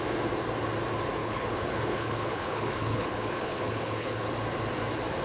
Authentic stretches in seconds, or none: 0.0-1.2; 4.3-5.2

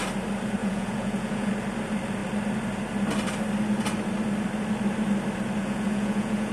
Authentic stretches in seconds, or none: 0.0-0.6; 1.5-5.6